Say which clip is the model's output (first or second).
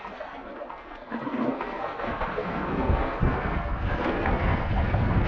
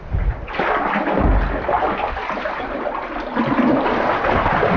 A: first